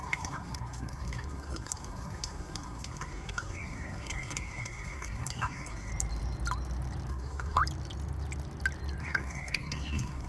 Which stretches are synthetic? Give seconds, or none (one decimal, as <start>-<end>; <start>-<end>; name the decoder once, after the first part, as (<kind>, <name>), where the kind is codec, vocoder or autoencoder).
0.0-5.9 (codec, SNAC); 7.1-7.6; 9.0-10.3